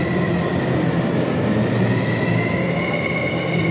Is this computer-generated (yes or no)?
no